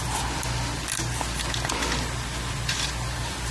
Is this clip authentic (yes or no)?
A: no